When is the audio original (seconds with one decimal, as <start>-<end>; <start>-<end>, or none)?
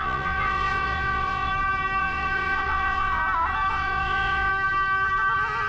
1.5-2.0; 3.2-3.7; 4.5-5.7